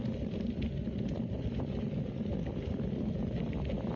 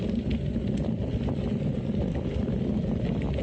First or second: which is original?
second